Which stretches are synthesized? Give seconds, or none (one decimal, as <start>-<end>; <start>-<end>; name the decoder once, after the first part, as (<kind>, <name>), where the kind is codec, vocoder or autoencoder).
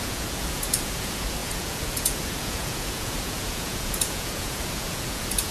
0.0-5.5 (vocoder, Vocos)